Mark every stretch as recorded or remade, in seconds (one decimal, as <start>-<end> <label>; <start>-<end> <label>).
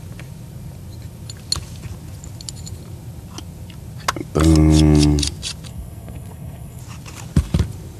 0.0-5.7 recorded; 5.7-6.8 remade; 6.8-8.0 recorded